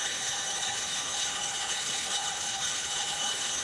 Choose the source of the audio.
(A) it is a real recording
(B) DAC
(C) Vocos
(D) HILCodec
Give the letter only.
D